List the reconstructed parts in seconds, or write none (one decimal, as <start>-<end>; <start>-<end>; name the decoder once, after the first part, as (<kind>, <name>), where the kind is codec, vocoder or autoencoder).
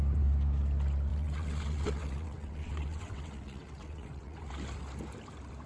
1.1-4.5 (vocoder, WaveNeXt)